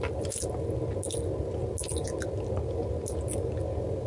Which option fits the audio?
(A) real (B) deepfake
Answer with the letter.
A